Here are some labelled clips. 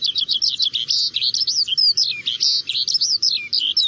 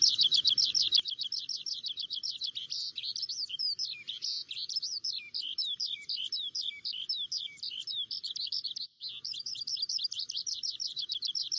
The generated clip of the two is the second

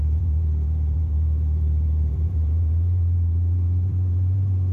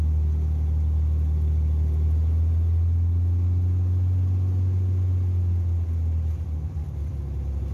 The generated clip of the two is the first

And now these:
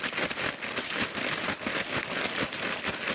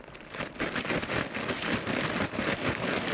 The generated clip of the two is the first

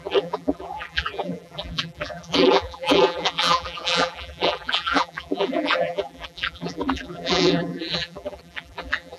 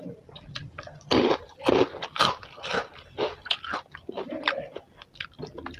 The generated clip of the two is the first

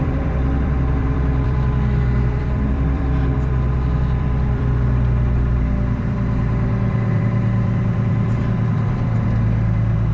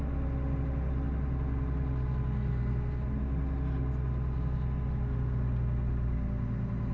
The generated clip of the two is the first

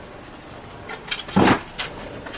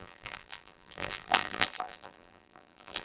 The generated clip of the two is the second